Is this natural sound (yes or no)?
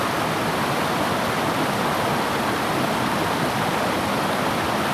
yes